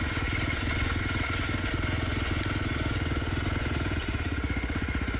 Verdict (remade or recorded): remade